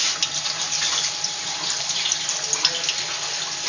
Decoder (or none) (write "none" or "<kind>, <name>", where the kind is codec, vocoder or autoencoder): none